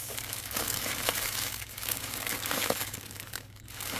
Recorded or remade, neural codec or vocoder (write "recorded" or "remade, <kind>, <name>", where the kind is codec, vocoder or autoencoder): remade, codec, DAC